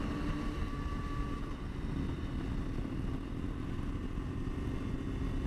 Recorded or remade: recorded